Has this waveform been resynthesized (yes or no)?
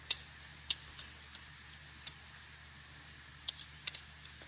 no